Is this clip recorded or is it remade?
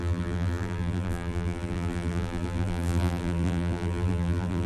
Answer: remade